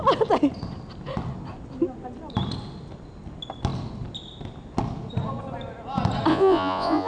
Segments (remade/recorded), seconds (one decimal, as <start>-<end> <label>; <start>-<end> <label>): 0.0-6.3 recorded; 6.3-7.1 remade